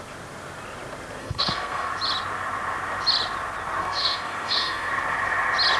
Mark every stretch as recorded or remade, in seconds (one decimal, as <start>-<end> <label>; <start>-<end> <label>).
0.0-1.2 recorded; 1.2-1.9 remade; 1.9-3.8 recorded; 3.8-4.9 remade; 4.9-5.8 recorded